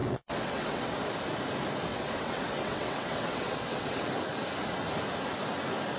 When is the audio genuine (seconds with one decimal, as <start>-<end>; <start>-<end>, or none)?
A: 1.0-1.9; 4.1-6.0